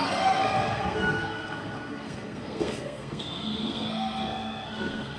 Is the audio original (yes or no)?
no